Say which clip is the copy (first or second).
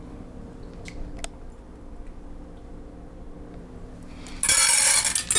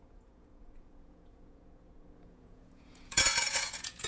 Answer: second